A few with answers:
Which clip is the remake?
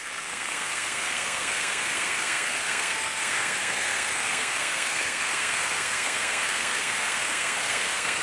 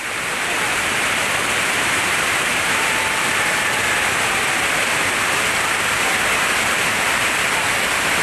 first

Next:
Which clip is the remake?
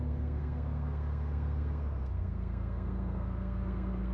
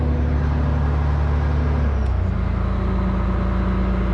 first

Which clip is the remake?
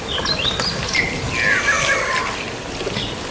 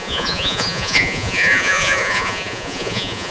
second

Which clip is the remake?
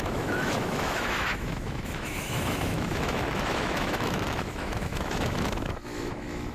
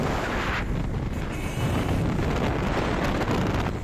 first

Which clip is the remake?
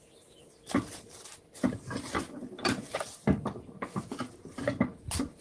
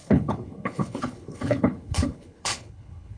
second